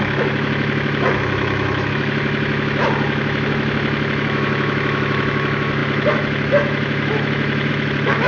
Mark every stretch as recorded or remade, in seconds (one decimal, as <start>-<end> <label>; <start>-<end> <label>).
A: 0.0-8.3 remade